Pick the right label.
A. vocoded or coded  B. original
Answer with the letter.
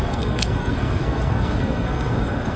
A